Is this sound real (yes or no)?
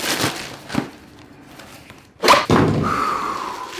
yes